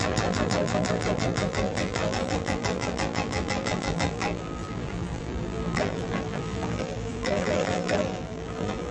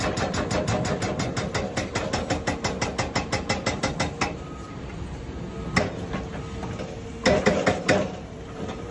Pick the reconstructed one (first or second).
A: first